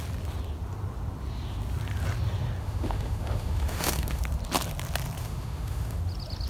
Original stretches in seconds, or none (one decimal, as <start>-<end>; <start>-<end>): 0.0-2.6; 4.2-5.2; 6.0-6.5